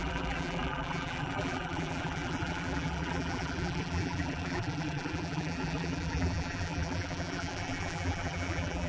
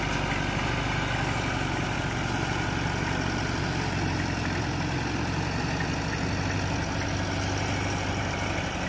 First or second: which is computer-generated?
first